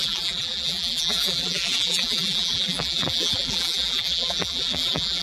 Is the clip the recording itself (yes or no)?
no